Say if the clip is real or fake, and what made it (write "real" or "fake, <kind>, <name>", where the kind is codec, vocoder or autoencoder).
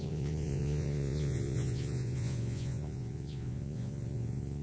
fake, vocoder, Vocos